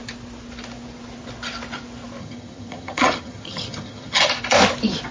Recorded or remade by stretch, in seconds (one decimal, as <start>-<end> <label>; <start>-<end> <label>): 0.0-2.2 recorded; 2.2-4.3 remade; 4.3-5.1 recorded